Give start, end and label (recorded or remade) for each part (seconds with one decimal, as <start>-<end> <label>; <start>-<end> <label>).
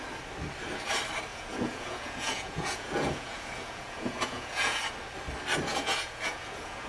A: 0.0-1.3 recorded; 1.3-4.8 remade; 4.8-5.7 recorded; 5.7-6.9 remade